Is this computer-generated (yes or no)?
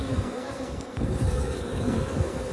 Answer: yes